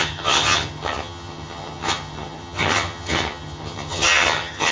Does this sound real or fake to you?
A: fake